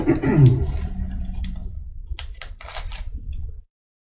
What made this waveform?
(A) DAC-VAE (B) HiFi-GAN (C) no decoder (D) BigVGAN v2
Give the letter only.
C